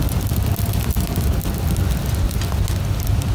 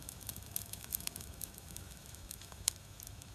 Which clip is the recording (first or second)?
first